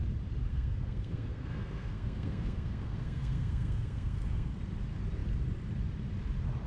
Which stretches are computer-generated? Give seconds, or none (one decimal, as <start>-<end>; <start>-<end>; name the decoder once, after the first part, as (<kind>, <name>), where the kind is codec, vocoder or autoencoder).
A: 0.5-4.5 (codec, SNAC)